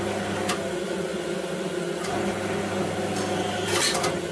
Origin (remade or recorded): recorded